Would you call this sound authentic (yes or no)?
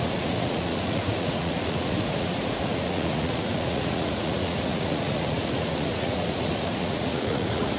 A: no